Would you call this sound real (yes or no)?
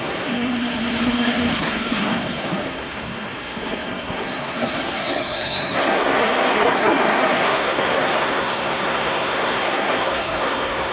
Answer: no